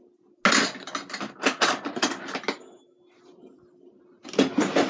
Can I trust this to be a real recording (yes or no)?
yes